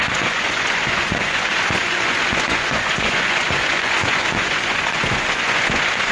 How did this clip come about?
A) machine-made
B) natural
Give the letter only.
A